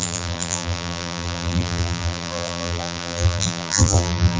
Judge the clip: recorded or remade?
remade